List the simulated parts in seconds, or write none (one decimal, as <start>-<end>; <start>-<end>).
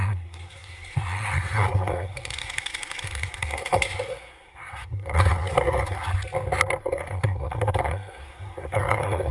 0.0-6.1; 6.8-9.3